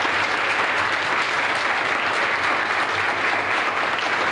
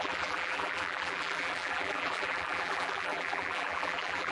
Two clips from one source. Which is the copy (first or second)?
second